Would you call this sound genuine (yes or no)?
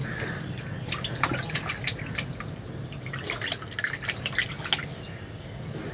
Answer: yes